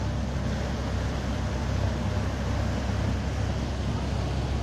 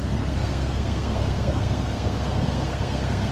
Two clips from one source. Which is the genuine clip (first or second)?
first